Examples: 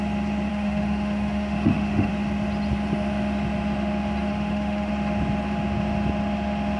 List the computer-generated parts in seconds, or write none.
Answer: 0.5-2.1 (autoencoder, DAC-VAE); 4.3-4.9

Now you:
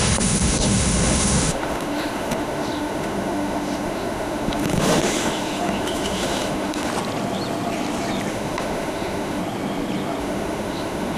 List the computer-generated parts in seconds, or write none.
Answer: 0.0-6.9 (autoencoder, DAC-VAE); 8.3-9.4; 10.2-11.2

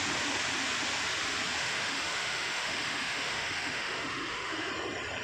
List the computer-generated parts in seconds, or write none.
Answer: 1.6-4.7 (autoencoder, DAC-VAE)